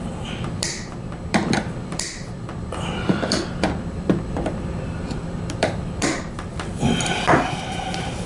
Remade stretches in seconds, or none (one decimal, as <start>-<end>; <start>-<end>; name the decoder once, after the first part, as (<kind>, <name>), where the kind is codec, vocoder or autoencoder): 0.0-8.3 (vocoder, BigVGAN v2)

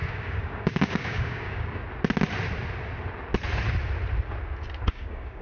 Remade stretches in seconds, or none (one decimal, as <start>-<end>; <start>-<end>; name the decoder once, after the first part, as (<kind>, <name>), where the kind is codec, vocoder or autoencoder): 0.0-1.8 (codec, DAC); 4.9-5.4

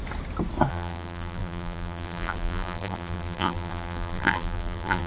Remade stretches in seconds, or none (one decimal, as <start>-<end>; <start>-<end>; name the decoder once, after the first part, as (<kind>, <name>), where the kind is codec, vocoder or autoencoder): 0.7-5.1 (vocoder, BigVGAN v2)

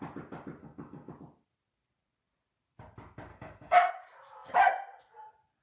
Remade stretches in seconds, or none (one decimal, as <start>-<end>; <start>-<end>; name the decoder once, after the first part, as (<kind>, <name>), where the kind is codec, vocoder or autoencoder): 0.6-1.1 (codec, SNAC); 3.3-3.9